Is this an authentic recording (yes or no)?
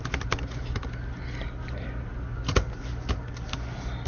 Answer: yes